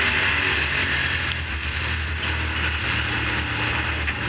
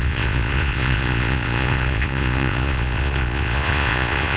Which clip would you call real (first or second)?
first